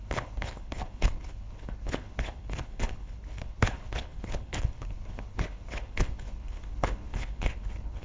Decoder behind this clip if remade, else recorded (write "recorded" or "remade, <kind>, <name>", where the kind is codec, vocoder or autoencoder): remade, codec, HILCodec